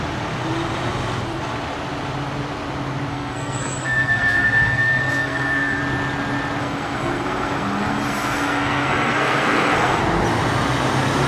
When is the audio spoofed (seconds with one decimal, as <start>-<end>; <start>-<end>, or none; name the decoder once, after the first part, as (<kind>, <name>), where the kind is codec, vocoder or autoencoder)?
3.1-5.8 (codec, SNAC); 6.6-10.0